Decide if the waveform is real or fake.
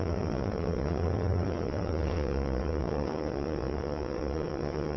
fake